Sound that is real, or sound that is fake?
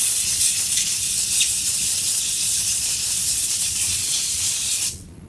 fake